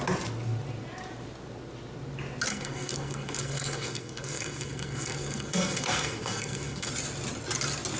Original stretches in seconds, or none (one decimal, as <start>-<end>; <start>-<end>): 0.0-2.5; 6.9-8.0

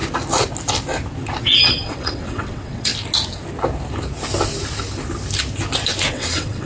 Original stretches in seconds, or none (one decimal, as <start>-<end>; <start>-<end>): 0.0-1.4; 2.9-6.1

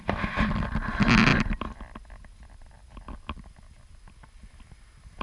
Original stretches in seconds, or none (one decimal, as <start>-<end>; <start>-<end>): 0.0-5.2